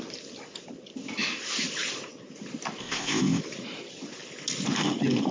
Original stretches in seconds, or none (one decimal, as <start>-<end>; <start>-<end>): 0.0-2.8; 3.4-5.3